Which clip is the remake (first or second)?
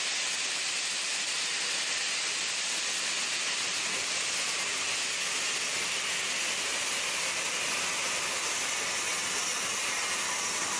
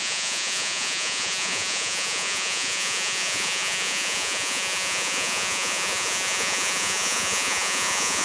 second